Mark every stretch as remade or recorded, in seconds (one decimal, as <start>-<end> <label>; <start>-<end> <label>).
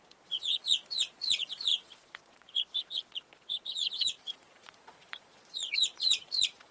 0.0-6.7 remade